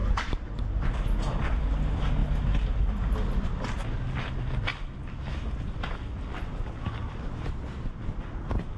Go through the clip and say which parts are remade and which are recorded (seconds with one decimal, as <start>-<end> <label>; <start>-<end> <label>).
0.0-1.6 remade; 1.6-8.8 recorded

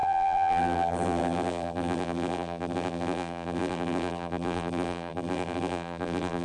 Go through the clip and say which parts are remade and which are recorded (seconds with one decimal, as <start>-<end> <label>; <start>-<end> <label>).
0.0-6.4 remade